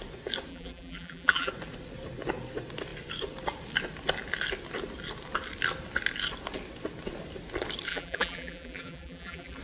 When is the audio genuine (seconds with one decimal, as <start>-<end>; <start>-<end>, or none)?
0.0-0.5; 1.5-7.9